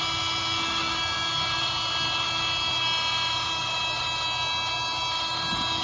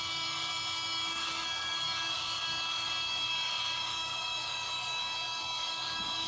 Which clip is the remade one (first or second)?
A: second